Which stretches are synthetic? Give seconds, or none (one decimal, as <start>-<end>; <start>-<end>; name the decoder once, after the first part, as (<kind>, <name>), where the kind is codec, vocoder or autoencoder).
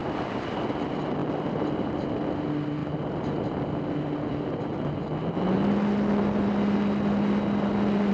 1.2-2.1 (vocoder, BigVGAN v2); 2.8-3.4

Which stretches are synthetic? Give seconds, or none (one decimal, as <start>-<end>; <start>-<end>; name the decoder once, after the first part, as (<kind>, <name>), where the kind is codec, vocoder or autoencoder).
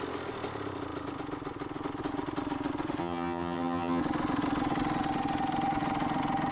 3.0-4.0 (vocoder, HiFi-GAN)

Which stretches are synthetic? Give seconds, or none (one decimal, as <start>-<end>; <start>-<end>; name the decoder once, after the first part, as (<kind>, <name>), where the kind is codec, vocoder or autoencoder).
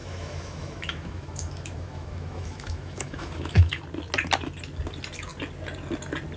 0.0-3.8 (autoencoder, DAC-VAE)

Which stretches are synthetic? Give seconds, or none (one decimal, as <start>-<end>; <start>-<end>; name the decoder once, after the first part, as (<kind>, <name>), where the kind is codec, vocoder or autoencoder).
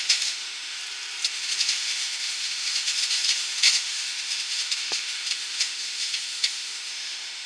0.0-0.8 (autoencoder, DAC-VAE); 1.3-7.5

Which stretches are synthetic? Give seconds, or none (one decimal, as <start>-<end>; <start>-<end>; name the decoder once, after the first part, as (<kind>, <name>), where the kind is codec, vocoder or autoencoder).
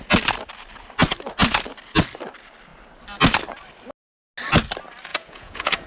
5.1-5.9 (vocoder, Vocos)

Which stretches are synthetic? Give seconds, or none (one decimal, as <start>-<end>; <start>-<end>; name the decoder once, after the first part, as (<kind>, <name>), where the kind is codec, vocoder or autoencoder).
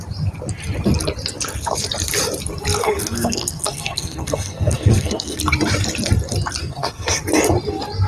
2.8-5.4 (codec, SNAC); 6.6-7.2